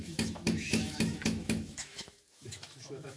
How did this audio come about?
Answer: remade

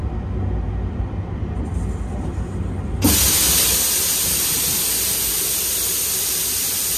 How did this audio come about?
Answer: recorded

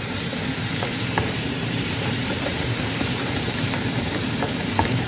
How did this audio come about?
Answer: remade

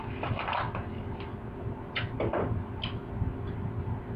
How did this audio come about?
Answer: recorded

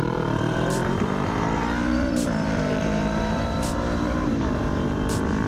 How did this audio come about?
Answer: remade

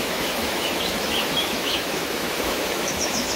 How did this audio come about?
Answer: remade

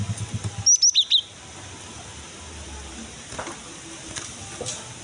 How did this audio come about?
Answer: recorded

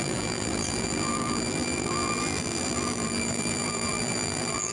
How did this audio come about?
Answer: remade